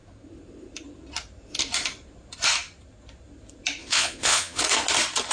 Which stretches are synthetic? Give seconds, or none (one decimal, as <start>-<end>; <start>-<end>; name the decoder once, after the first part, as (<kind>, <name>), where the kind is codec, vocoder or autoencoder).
3.8-4.6 (vocoder, Vocos)